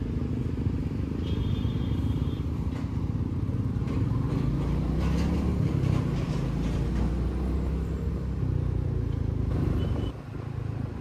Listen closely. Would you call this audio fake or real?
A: real